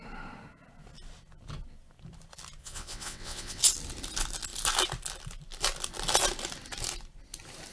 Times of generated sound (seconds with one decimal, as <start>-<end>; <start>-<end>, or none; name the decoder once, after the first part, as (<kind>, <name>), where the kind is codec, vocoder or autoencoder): 2.6-3.6 (vocoder, WaveNeXt)